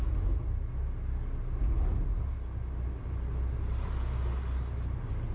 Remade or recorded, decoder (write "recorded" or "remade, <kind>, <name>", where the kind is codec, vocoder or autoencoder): recorded